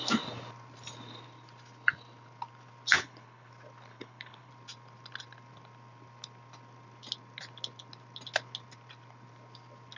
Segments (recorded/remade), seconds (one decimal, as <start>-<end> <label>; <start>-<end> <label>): 0.0-2.9 recorded; 2.9-3.5 remade; 3.5-3.9 recorded; 3.9-4.5 remade; 4.5-10.0 recorded